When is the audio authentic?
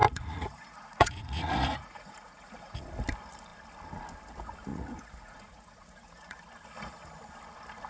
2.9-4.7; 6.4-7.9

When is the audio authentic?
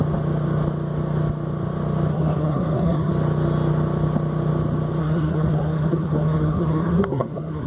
0.0-2.1; 3.1-5.0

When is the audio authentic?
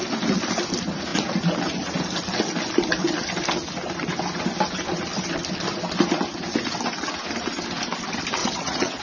0.0-8.4